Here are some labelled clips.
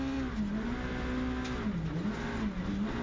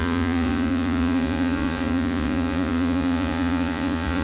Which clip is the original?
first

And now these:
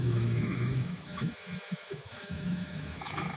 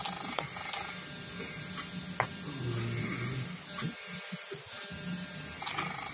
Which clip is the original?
second